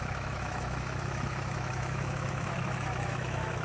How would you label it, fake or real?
fake